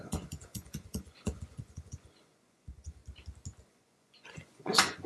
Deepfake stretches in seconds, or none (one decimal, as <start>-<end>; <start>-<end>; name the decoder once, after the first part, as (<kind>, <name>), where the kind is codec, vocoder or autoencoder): 0.0-3.0 (vocoder, Vocos); 3.7-5.1